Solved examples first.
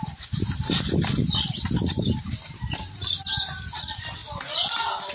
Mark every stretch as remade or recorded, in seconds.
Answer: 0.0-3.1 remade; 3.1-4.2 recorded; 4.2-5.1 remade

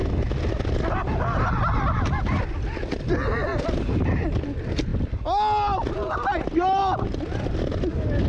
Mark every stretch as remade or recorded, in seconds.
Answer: 0.0-8.3 recorded

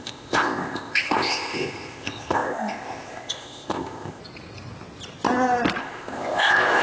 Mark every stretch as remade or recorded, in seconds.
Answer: 0.0-4.2 remade; 4.2-5.8 recorded; 5.8-6.8 remade

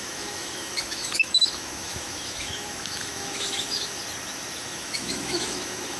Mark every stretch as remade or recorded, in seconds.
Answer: 0.0-4.0 remade; 4.0-4.6 recorded; 4.6-6.0 remade

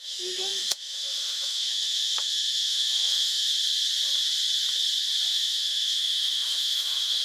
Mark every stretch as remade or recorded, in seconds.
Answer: 0.0-3.5 remade; 3.5-5.3 recorded; 5.3-7.2 remade